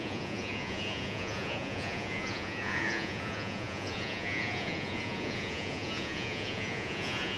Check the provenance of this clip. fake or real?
fake